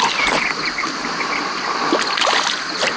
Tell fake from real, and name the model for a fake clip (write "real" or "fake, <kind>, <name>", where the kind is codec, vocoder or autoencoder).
real